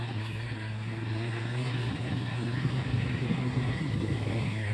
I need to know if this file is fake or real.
fake